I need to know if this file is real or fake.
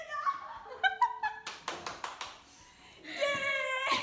real